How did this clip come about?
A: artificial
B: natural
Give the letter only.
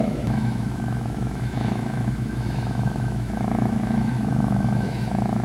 A